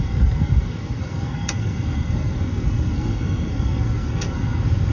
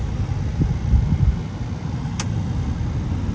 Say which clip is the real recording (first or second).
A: second